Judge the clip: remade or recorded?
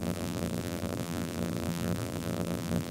remade